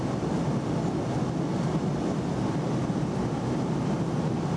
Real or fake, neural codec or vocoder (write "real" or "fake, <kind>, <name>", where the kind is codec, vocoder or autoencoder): real